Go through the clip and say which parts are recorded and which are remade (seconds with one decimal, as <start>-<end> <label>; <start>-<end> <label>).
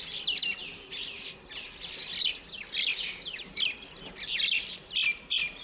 0.0-5.6 recorded